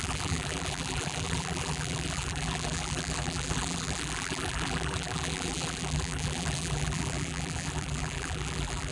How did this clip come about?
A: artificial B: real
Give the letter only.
A